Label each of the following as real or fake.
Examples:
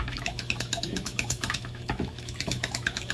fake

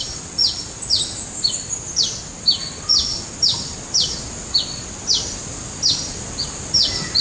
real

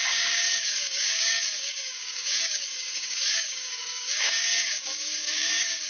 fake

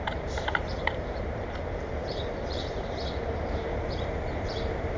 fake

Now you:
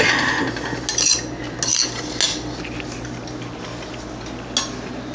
real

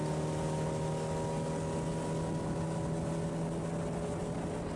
real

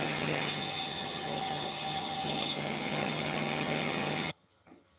fake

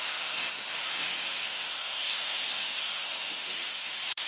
fake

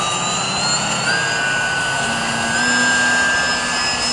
real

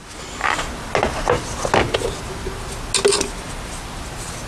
real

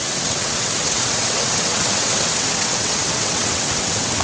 fake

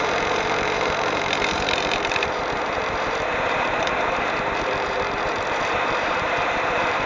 fake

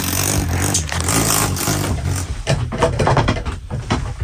real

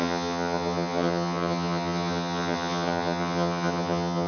fake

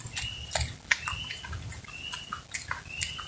real